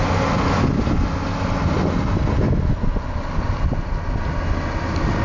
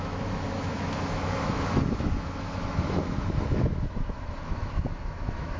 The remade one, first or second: second